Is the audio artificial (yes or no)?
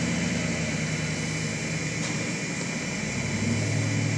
no